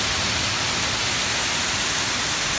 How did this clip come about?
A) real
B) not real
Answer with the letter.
A